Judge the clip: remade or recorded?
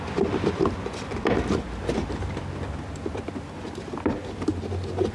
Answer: recorded